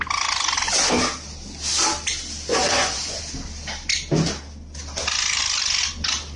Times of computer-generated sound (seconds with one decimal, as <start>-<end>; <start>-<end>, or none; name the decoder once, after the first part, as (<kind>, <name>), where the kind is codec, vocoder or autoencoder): 2.5-3.2 (vocoder, Vocos)